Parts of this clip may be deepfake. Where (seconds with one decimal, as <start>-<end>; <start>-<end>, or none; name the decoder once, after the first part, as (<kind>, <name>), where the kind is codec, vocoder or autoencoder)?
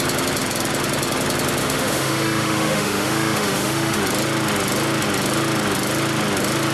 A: 1.6-4.0 (autoencoder, DAC-VAE)